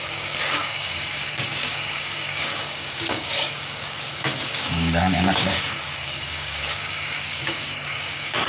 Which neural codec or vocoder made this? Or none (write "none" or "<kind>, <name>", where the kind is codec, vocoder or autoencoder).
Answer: codec, DAC